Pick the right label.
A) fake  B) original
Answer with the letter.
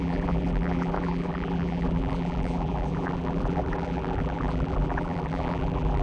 A